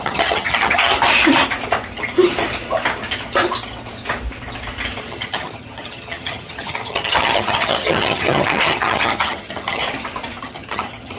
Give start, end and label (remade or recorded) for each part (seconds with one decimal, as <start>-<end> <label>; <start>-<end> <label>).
0.0-0.9 remade; 0.9-5.0 recorded; 5.0-9.8 remade; 9.8-10.4 recorded; 10.4-11.2 remade